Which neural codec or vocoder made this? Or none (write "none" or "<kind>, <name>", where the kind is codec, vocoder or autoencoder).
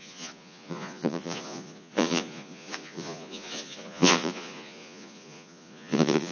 vocoder, Vocos